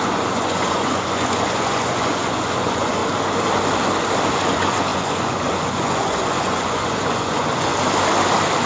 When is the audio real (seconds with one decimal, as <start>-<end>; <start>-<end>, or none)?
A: 3.0-4.3; 7.7-8.7